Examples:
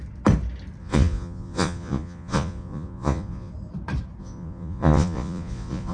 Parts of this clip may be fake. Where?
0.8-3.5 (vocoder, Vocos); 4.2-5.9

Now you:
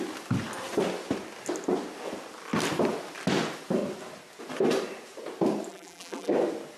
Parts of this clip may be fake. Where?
5.7-6.3 (vocoder, BigVGAN v2)

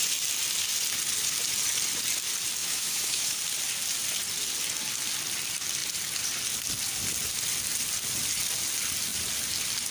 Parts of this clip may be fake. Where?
2.6-3.4 (autoencoder, DAC-VAE)

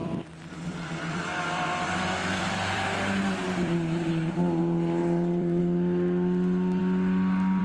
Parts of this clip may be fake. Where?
0.0-4.6 (vocoder, BigVGAN v2); 5.0-5.6

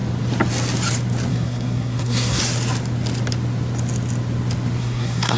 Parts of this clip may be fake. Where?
1.3-2.4 (codec, SNAC); 4.8-5.4

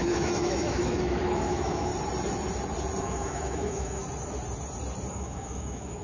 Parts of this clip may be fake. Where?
0.0-1.9 (autoencoder, DAC-VAE); 3.0-4.0; 5.1-6.0

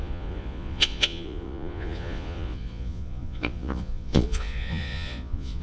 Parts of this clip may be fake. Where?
0.0-5.6 (vocoder, Vocos)